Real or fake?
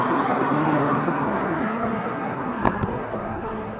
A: fake